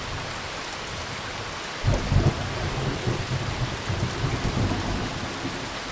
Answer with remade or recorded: recorded